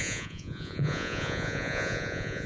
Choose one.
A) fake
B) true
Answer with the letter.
A